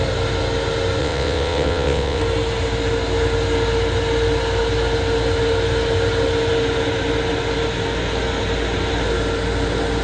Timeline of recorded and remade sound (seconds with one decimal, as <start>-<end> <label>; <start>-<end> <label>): 0.0-1.0 recorded; 1.0-2.2 remade; 2.2-10.0 recorded